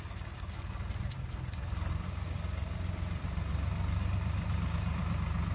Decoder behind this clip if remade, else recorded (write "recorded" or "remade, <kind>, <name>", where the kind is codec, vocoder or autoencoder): recorded